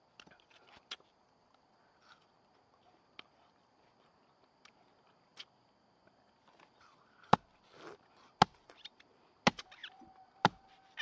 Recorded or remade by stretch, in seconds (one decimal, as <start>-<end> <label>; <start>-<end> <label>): 0.0-11.0 recorded